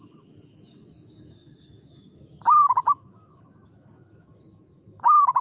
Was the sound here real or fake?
fake